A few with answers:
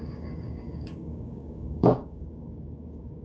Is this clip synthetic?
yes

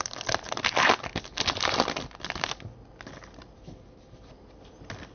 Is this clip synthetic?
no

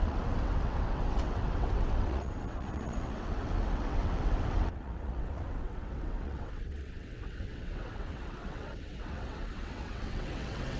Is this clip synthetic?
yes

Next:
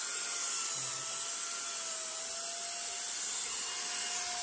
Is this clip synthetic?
no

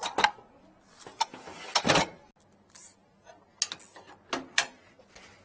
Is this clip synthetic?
no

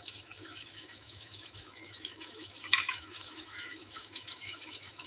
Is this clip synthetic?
yes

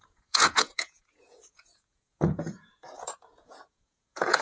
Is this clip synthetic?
yes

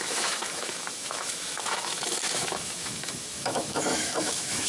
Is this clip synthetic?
yes